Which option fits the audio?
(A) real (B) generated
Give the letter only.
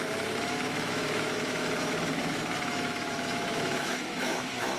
B